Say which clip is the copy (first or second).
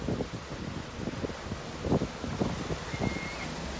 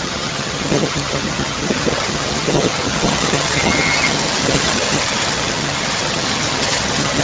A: second